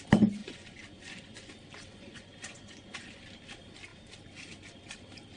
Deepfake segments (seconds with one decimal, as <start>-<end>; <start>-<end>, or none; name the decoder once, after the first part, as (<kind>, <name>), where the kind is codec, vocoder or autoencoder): 0.4-1.5 (vocoder, Vocos); 1.9-3.2